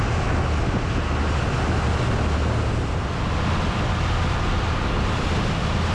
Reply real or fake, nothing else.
real